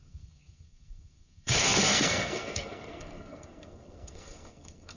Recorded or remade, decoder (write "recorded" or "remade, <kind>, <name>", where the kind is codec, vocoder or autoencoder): remade, codec, SNAC